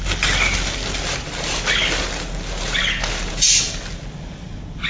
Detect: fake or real real